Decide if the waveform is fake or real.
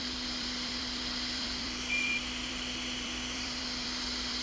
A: fake